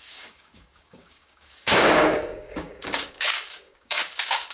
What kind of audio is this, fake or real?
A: fake